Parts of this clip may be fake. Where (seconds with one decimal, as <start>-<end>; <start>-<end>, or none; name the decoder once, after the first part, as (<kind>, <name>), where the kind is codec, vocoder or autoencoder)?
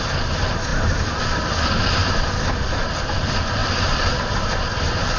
0.7-1.2 (vocoder, BigVGAN v2); 2.0-2.8; 3.6-4.4